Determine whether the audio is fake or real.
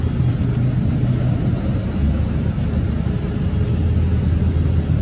real